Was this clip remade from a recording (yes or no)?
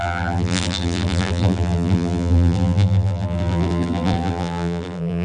yes